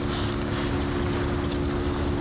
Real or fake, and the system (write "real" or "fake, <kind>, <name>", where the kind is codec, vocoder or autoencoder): real